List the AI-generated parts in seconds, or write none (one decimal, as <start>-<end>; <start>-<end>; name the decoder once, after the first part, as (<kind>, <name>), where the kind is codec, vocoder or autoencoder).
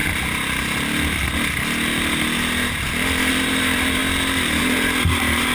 3.3-4.0 (vocoder, BigVGAN v2); 4.6-5.5